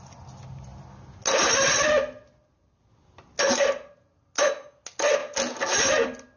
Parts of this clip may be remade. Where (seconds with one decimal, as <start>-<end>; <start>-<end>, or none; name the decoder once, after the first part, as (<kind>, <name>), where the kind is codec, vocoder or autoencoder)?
none